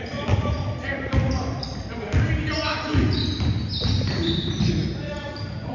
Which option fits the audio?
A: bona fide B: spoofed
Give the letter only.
A